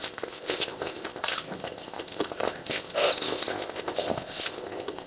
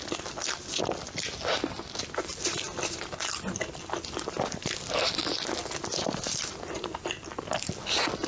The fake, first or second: first